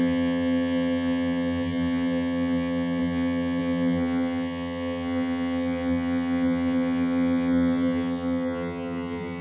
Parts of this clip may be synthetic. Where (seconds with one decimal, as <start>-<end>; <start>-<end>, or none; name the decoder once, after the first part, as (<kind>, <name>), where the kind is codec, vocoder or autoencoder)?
0.0-9.4 (vocoder, HiFi-GAN)